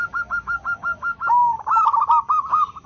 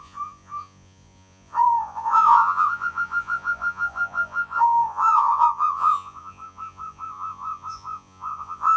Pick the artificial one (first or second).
second